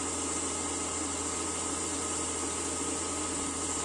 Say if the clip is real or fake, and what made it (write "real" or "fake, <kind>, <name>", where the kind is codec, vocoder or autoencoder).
real